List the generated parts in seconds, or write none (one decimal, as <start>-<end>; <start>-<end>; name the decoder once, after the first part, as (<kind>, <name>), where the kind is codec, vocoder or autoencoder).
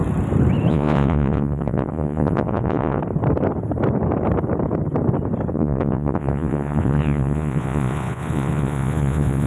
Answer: 0.7-3.0 (vocoder, Vocos); 5.5-9.5